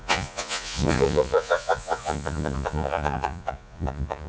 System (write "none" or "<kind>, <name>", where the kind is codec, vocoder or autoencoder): vocoder, Vocos